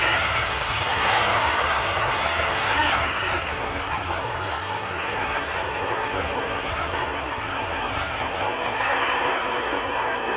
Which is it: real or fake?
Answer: fake